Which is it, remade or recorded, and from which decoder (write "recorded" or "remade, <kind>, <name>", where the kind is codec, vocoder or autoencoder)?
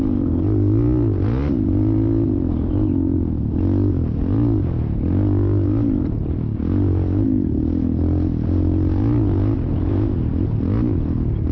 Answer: recorded